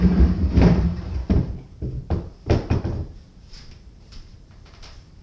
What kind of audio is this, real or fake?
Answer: fake